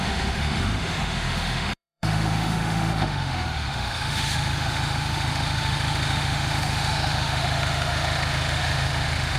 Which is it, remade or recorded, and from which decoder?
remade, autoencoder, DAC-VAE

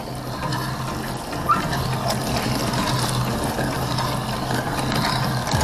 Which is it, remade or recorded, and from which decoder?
recorded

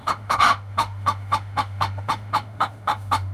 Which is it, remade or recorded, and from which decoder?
remade, autoencoder, DAC-VAE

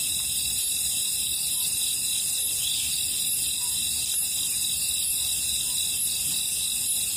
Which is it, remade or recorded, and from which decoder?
recorded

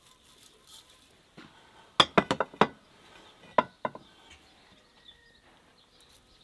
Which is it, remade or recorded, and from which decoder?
recorded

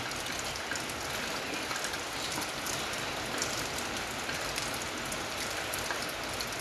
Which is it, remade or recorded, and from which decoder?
recorded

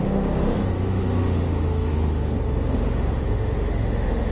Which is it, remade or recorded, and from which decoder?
remade, autoencoder, DAC-VAE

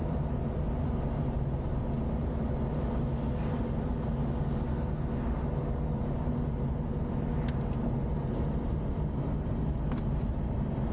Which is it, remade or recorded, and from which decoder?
recorded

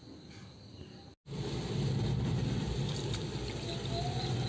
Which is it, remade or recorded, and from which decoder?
recorded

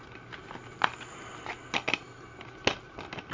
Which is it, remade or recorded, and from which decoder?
recorded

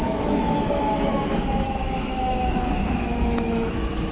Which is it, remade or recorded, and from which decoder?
remade, autoencoder, DAC-VAE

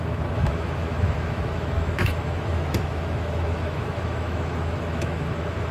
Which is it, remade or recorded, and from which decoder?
remade, autoencoder, DAC-VAE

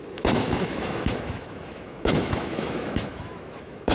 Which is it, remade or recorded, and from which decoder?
remade, autoencoder, DAC-VAE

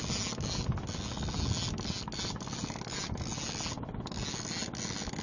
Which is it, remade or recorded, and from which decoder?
recorded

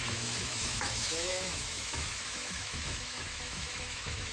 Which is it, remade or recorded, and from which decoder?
remade, autoencoder, DAC-VAE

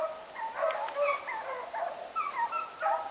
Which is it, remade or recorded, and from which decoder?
recorded